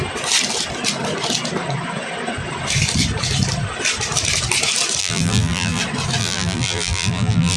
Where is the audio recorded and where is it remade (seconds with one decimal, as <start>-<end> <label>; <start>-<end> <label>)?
0.0-5.0 recorded; 5.0-5.8 remade; 5.8-6.2 recorded; 6.2-7.6 remade